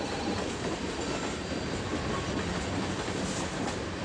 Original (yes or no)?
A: yes